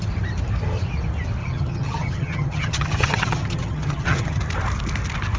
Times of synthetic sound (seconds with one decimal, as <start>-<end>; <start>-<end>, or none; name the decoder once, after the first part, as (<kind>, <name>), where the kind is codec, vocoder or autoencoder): 1.4-4.4 (vocoder, HiFi-GAN)